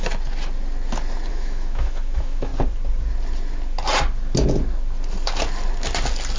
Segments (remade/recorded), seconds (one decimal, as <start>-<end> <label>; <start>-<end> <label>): 0.0-1.3 recorded; 1.3-2.5 remade; 2.5-6.4 recorded